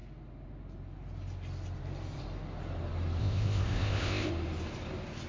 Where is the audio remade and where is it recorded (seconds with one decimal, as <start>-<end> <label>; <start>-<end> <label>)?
0.0-3.2 recorded; 3.2-4.3 remade; 4.3-5.3 recorded